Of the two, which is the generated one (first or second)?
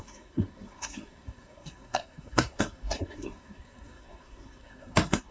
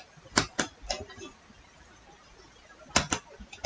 first